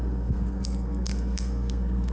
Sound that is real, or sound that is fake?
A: fake